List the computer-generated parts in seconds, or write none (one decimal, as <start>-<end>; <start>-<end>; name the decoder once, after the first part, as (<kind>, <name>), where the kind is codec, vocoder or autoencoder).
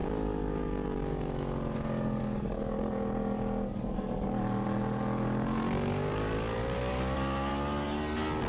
0.0-7.5 (codec, DAC)